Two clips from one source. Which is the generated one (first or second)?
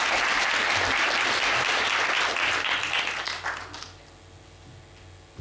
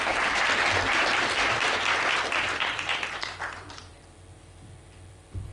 second